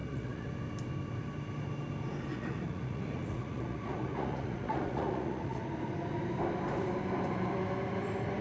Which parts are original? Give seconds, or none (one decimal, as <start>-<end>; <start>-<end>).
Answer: 0.5-2.3; 5.6-8.4